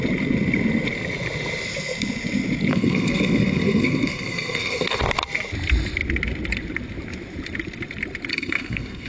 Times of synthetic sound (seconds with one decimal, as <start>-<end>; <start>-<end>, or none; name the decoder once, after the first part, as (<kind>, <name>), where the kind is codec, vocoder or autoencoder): 2.7-5.0 (codec, SNAC); 8.3-9.1